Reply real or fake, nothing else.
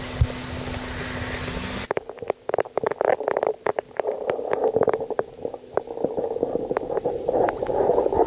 real